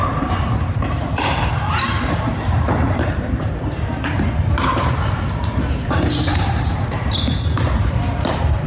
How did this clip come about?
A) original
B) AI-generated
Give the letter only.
B